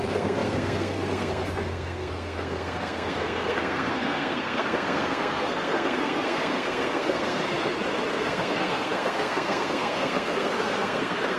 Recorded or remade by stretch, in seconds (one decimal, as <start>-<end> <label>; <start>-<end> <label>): 0.0-7.4 remade; 7.4-8.1 recorded; 8.1-11.4 remade